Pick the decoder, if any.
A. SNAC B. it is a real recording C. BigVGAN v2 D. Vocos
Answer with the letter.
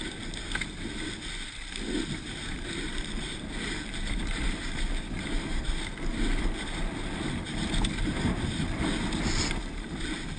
B